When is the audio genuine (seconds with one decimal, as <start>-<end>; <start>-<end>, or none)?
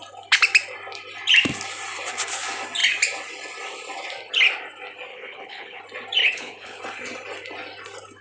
0.0-5.1; 5.8-6.2; 6.8-8.2